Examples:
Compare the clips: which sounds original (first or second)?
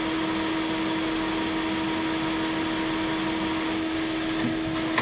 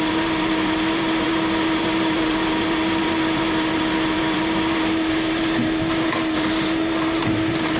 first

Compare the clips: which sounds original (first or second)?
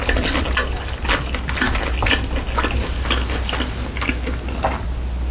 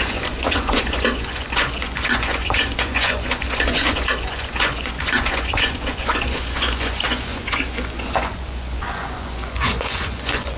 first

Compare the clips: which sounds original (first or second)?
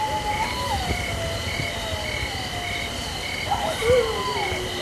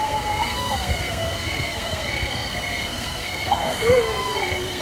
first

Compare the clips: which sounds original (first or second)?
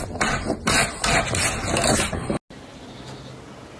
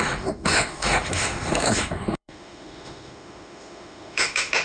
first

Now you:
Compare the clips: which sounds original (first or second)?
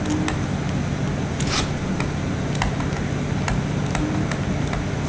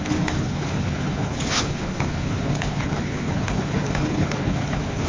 first